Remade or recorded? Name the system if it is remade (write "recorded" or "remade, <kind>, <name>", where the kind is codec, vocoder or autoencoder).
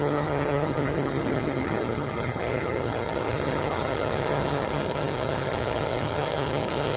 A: remade, vocoder, HiFi-GAN